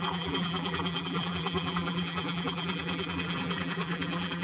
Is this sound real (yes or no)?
no